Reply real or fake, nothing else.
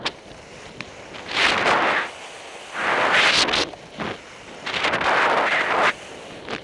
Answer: real